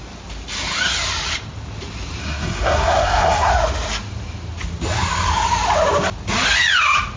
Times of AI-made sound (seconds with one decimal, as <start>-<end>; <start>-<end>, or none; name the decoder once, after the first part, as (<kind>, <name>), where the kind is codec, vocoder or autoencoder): 2.2-3.5 (codec, SNAC)